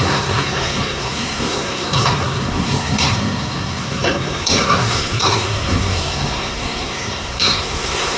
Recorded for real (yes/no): no